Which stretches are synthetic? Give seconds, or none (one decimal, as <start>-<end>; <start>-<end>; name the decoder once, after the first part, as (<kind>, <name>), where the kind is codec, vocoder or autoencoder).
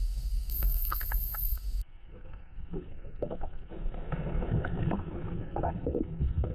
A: 0.0-6.5 (codec, SNAC)